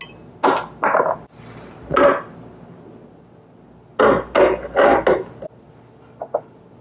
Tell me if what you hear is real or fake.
real